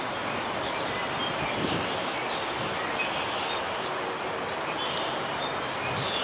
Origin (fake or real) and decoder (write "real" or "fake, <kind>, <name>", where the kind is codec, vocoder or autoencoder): real